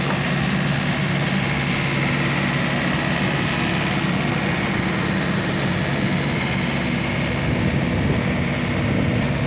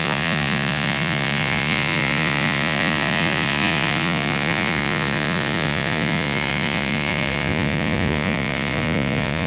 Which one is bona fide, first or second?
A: first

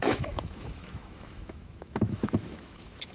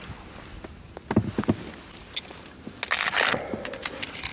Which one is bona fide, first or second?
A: second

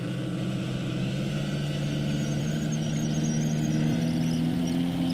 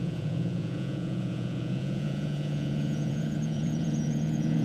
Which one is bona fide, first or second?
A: first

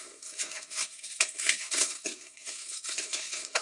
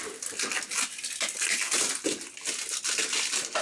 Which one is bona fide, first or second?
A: second